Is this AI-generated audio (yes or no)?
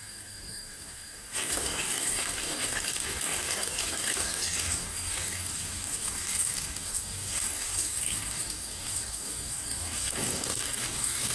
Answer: yes